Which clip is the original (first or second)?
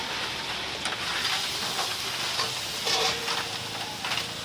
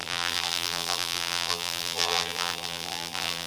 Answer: first